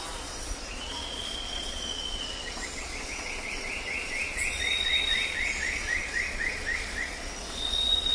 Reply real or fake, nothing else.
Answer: fake